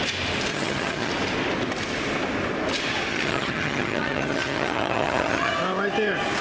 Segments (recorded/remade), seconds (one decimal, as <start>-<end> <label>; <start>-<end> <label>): 0.0-0.5 recorded; 0.5-1.1 remade; 1.1-3.1 recorded; 3.1-5.5 remade; 5.5-6.4 recorded